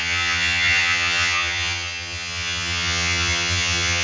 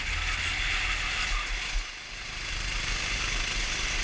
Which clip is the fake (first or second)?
first